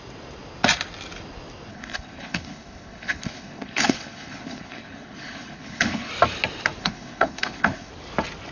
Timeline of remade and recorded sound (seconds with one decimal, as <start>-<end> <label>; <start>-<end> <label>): 0.0-1.7 recorded; 1.7-6.1 remade; 6.1-6.8 recorded; 6.8-7.9 remade; 7.9-8.5 recorded